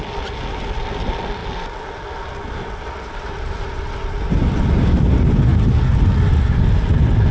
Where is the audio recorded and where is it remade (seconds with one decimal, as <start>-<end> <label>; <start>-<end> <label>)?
0.0-7.3 recorded